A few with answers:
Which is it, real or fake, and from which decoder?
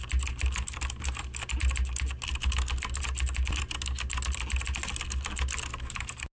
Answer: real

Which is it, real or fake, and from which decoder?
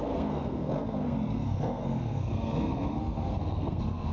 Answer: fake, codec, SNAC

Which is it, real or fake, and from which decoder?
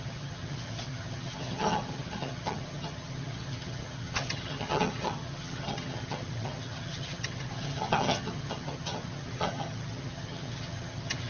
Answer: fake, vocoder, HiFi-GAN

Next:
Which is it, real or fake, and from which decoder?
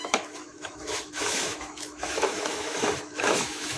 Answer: fake, autoencoder, DAC-VAE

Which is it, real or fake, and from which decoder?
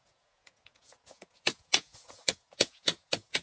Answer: fake, vocoder, Vocos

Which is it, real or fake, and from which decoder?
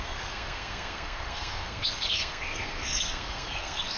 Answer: fake, codec, SNAC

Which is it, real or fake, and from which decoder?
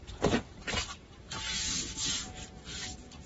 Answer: real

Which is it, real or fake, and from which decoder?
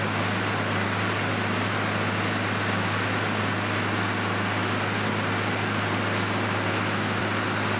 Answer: real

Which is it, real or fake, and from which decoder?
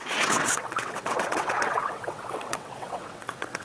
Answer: fake, vocoder, WaveNeXt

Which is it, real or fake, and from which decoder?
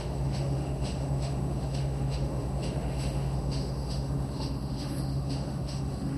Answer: fake, autoencoder, DAC-VAE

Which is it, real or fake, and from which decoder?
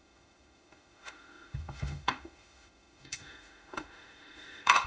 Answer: fake, autoencoder, DAC-VAE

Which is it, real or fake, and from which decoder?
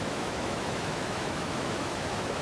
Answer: fake, autoencoder, DAC-VAE